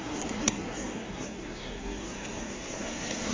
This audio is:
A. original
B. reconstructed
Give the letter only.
B